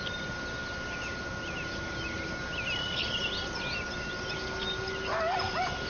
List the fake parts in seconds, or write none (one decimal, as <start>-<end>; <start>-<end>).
none